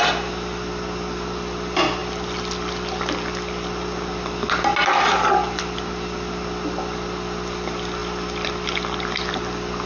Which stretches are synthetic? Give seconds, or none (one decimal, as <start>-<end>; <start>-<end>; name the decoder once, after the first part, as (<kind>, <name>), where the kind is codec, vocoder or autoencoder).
none

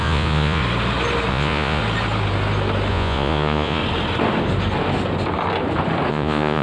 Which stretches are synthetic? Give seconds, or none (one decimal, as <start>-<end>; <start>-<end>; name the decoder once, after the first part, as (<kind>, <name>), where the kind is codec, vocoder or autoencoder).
0.0-0.6 (vocoder, Vocos); 1.3-1.8; 2.9-3.8; 6.1-6.6

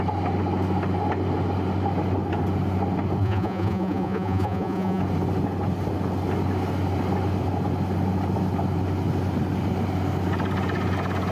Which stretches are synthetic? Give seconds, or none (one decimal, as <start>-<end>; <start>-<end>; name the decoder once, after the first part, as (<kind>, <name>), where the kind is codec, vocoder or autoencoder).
3.2-5.0 (vocoder, Vocos)